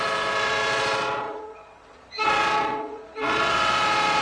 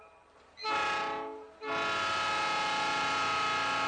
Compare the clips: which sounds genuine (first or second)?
second